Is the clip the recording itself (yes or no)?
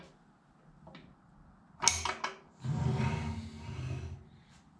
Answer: yes